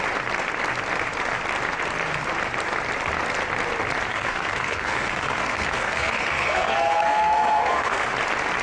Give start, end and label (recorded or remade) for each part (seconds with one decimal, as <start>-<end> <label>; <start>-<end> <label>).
0.0-4.1 recorded; 4.1-8.1 remade; 8.1-8.6 recorded